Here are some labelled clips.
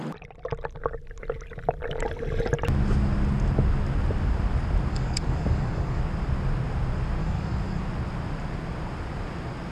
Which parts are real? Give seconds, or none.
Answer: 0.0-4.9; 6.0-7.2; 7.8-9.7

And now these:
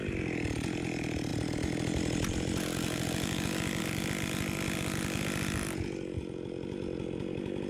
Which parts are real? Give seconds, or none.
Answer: 0.0-7.7